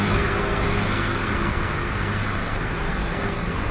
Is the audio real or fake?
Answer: fake